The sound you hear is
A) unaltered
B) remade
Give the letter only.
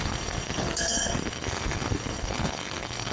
B